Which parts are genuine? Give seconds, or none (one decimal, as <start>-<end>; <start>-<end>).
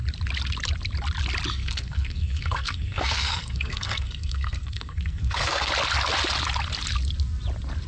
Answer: 0.0-1.6; 5.7-7.9